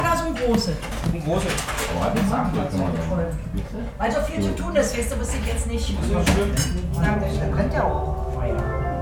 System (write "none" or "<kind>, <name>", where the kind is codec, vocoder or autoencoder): none